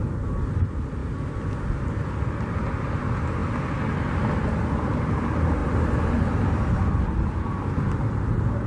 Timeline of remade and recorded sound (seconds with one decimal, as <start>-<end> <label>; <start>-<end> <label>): 0.0-8.7 recorded